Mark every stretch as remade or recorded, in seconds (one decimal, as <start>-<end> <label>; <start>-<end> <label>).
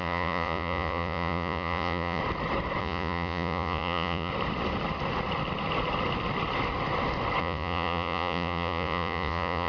0.0-2.2 remade; 2.2-2.8 recorded; 2.8-4.3 remade; 4.3-7.4 recorded; 7.4-9.7 remade